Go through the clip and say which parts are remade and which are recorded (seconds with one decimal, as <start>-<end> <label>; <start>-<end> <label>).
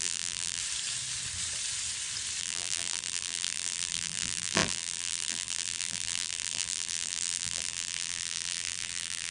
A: 0.0-0.6 remade; 0.6-2.4 recorded; 2.4-9.3 remade